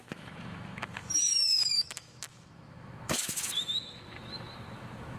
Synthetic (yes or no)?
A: yes